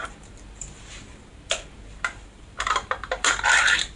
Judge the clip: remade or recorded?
remade